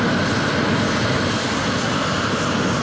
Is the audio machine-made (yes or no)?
no